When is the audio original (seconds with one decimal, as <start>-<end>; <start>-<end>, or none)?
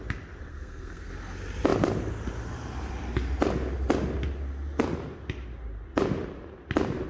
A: 0.0-0.5; 1.1-7.1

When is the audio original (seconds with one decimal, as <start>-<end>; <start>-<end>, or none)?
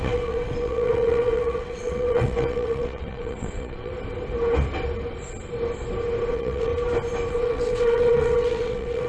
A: 3.9-6.3; 6.7-7.3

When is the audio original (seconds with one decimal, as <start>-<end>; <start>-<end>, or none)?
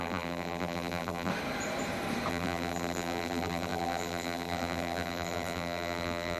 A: 1.3-2.3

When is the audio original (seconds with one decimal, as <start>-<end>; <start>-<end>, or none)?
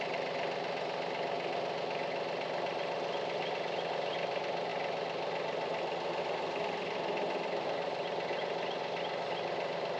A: 0.0-10.0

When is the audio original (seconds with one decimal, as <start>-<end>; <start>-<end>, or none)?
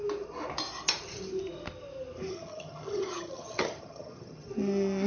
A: 0.0-2.3; 4.5-5.1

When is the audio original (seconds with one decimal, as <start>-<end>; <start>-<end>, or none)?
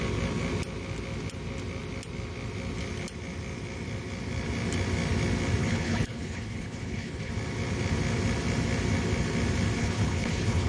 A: 0.0-5.6; 7.3-9.8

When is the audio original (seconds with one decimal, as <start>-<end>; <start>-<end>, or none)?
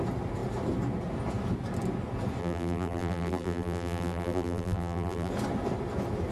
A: 0.0-2.4; 5.3-6.3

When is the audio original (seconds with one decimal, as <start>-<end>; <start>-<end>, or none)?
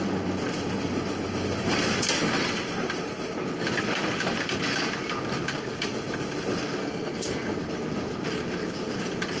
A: 0.0-6.8; 7.6-9.4